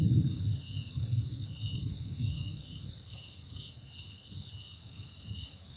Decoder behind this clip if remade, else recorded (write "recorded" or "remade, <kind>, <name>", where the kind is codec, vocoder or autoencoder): remade, codec, SNAC